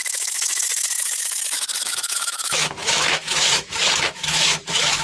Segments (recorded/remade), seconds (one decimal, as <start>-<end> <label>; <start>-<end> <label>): 0.0-5.0 remade